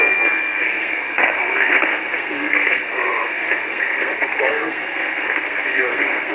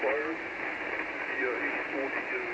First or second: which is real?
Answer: second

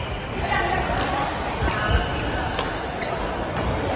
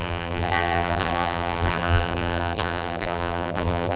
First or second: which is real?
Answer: first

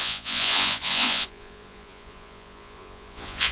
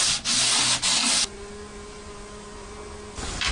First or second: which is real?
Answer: second